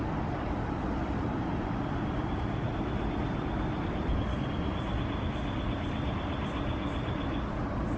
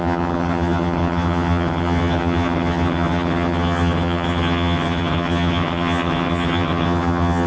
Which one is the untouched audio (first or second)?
first